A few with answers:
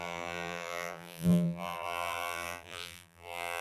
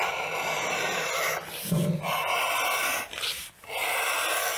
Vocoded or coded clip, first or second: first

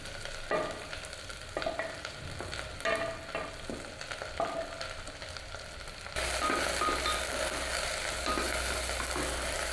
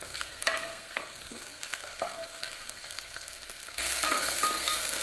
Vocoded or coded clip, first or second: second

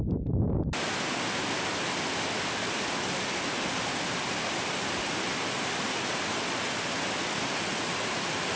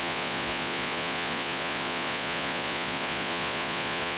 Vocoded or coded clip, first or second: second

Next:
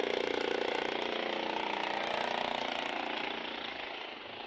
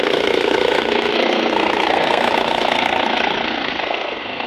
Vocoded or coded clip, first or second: second